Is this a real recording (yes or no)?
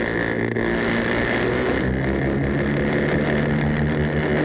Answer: yes